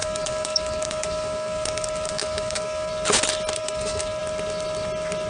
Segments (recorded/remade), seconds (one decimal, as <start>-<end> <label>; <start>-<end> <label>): 0.0-2.9 remade; 2.9-3.6 recorded; 3.6-4.2 remade; 4.2-5.3 recorded